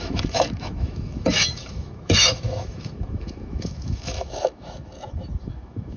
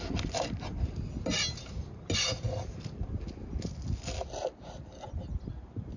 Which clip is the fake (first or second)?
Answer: first